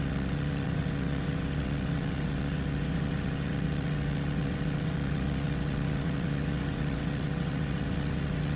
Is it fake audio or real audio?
fake